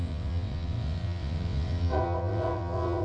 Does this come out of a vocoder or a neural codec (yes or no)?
yes